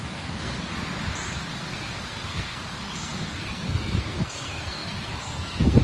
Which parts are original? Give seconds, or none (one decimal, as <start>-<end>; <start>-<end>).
0.7-1.6